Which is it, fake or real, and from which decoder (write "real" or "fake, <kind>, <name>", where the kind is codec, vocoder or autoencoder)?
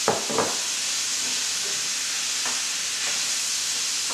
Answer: real